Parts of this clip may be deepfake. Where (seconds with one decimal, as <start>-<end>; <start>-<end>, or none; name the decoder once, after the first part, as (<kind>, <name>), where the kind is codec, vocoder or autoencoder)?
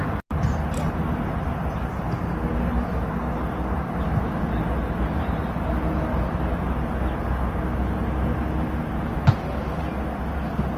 3.6-4.3 (vocoder, BigVGAN v2)